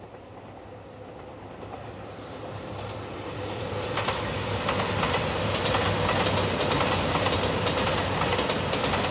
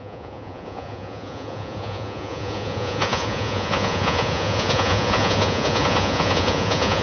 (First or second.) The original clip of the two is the first